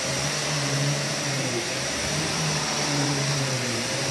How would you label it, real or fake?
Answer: fake